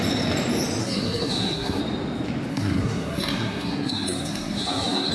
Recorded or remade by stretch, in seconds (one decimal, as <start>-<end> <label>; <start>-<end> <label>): 0.0-0.8 recorded; 0.8-1.8 remade; 1.8-2.5 recorded; 2.5-5.1 remade